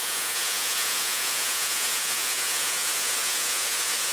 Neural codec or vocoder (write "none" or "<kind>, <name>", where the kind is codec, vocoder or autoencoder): vocoder, Vocos